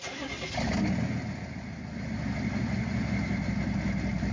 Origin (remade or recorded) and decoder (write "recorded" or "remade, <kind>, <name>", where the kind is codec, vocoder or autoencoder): recorded